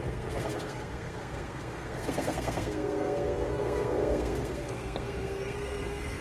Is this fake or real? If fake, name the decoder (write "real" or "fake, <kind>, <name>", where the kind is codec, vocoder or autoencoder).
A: fake, codec, SNAC